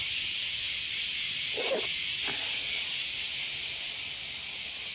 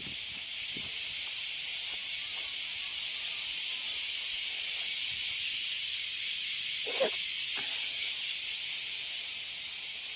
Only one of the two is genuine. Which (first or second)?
first